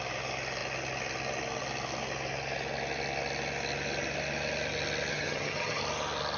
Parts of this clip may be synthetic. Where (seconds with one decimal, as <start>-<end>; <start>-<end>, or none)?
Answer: 5.1-5.8